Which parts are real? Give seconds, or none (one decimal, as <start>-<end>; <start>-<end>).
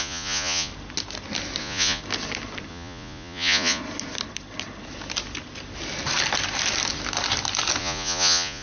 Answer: 0.7-1.6; 2.0-2.7; 3.8-7.8